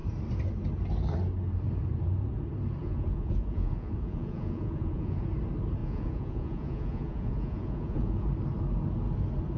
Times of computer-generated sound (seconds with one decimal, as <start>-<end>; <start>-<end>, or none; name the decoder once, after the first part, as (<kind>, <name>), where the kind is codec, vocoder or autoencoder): 2.8-5.2 (vocoder, Vocos); 5.8-8.3